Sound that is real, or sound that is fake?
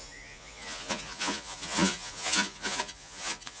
fake